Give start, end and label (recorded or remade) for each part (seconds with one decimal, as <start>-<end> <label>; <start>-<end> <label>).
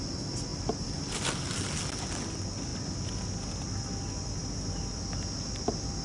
0.0-2.7 remade; 2.7-5.5 recorded; 5.5-6.0 remade